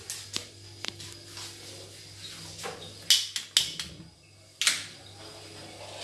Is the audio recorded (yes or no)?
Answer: yes